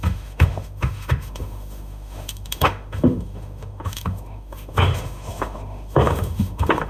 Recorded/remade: remade